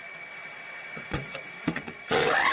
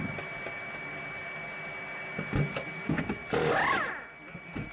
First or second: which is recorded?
second